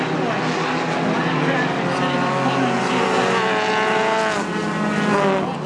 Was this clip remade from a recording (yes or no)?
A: no